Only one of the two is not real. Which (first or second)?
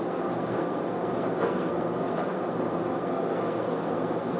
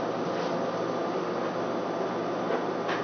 first